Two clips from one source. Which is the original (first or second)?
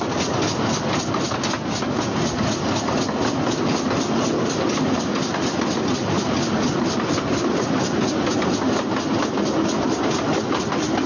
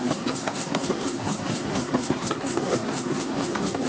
first